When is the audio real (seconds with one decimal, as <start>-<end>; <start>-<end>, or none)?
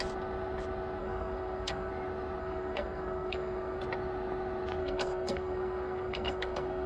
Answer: 0.0-1.0; 1.9-2.4; 3.8-4.8